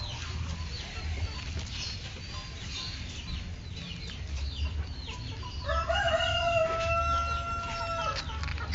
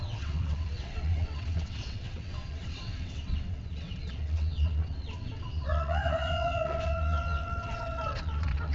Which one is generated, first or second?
second